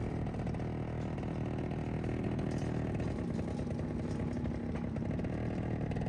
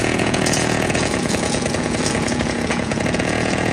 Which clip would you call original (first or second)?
first